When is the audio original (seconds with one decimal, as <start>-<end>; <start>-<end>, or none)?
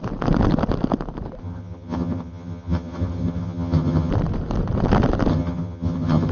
0.0-1.4; 4.1-5.3